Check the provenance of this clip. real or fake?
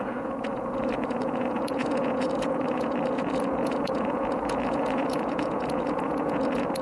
fake